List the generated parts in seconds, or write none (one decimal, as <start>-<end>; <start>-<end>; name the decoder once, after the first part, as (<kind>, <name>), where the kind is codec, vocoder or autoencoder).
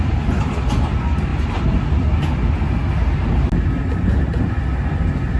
none